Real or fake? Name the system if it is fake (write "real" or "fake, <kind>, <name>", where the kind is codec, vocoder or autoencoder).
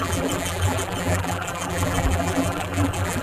fake, vocoder, BigVGAN v2